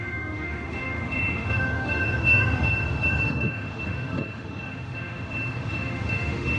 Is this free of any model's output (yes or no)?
no